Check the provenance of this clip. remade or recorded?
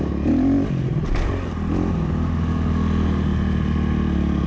recorded